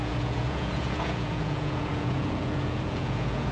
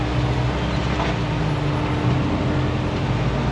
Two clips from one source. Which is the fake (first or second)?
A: first